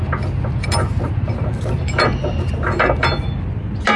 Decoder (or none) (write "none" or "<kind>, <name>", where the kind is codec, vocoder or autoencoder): none